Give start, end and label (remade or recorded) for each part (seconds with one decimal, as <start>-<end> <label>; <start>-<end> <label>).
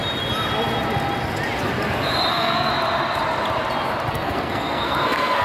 0.0-2.3 recorded; 2.3-2.7 remade; 2.7-4.1 recorded; 4.1-5.4 remade